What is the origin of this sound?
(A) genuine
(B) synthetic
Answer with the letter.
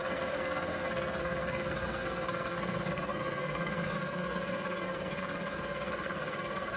B